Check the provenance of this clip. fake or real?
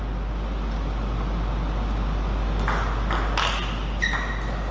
real